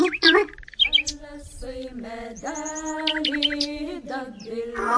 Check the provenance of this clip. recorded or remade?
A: recorded